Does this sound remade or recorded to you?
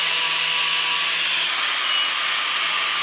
recorded